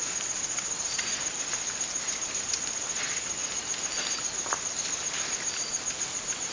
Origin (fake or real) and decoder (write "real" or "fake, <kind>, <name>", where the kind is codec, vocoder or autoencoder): real